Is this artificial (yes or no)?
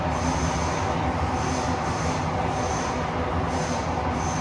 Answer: no